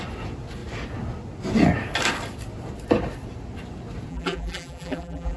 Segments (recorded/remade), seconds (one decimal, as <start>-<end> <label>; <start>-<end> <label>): 0.0-4.1 recorded; 4.1-5.4 remade